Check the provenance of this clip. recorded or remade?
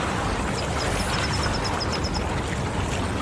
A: recorded